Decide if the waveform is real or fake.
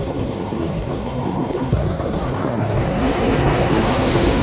fake